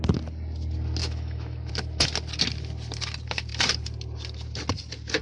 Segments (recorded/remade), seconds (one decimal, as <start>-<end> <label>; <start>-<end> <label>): 0.0-1.0 recorded; 1.0-1.7 remade; 1.7-5.2 recorded